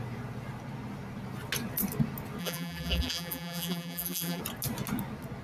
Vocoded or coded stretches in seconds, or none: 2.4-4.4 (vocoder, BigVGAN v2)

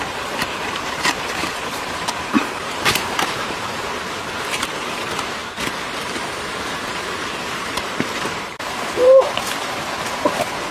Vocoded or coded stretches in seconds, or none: 0.0-5.4 (vocoder, BigVGAN v2); 6.2-10.7